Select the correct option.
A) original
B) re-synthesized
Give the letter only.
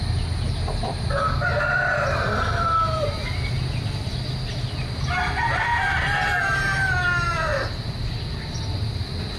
A